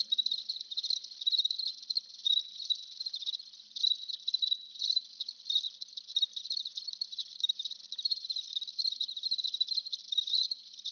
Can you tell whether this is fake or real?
real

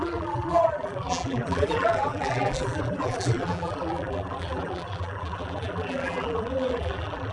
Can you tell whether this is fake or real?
fake